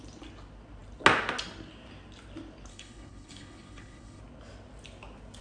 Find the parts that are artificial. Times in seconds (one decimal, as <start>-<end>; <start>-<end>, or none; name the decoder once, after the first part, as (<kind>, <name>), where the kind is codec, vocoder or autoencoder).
2.7-4.2 (codec, HILCodec)